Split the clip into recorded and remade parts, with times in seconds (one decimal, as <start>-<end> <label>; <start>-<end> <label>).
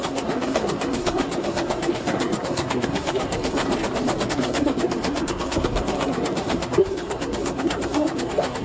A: 0.0-3.6 remade; 3.6-4.3 recorded; 4.3-8.6 remade